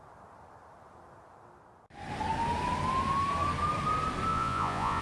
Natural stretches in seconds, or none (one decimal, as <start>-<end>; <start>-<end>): 0.0-4.3